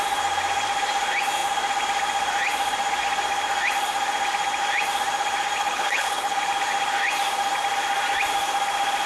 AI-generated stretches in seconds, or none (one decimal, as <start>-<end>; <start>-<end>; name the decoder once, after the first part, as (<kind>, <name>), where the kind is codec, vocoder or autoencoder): 5.6-6.4 (codec, HILCodec)